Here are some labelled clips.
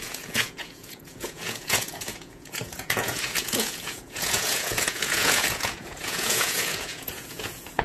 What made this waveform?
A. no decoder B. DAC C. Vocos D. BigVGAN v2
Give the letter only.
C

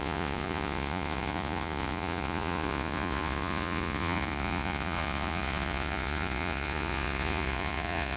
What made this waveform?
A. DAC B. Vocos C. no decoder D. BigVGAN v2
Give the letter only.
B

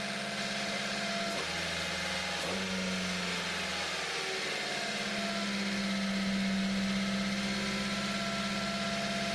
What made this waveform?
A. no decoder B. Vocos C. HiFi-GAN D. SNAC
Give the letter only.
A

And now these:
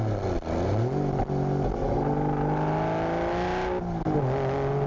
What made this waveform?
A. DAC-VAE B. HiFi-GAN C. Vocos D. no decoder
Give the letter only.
D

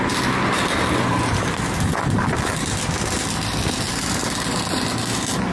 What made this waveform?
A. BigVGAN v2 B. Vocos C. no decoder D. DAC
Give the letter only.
C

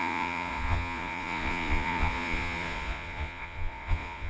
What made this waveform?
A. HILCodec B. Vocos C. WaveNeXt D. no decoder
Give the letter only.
B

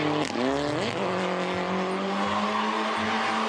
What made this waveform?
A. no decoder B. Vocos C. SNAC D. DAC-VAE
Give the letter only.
A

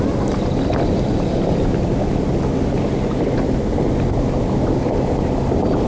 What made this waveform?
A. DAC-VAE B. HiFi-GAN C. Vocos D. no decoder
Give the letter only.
D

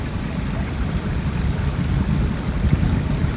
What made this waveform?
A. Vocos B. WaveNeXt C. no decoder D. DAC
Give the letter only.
C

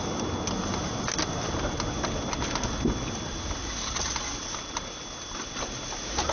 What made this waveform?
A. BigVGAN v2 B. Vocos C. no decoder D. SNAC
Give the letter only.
C